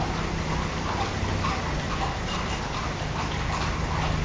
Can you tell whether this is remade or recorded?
recorded